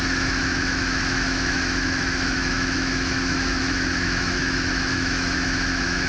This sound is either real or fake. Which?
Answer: fake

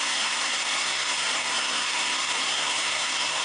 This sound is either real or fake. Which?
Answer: fake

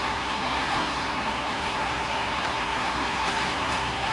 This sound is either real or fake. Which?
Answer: fake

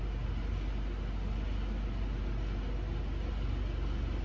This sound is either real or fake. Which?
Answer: real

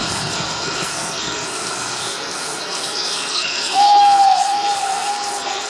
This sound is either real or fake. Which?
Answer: fake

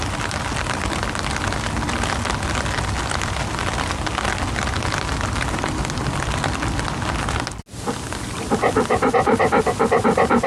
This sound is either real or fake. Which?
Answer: real